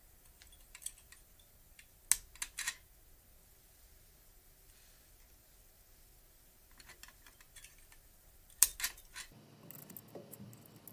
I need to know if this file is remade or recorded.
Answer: recorded